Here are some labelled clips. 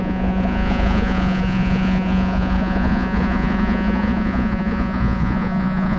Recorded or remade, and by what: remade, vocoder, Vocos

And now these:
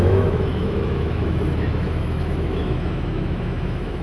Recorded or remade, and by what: remade, autoencoder, DAC-VAE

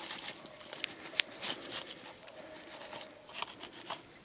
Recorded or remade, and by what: recorded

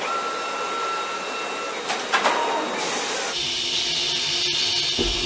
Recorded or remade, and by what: recorded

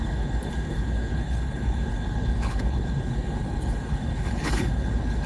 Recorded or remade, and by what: remade, codec, HILCodec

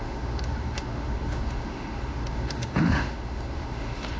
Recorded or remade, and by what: remade, autoencoder, DAC-VAE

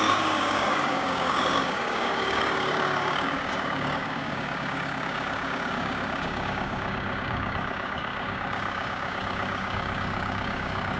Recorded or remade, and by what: remade, codec, DAC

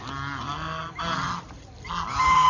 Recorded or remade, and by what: recorded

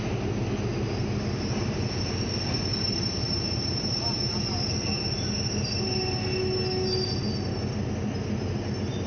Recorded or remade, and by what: recorded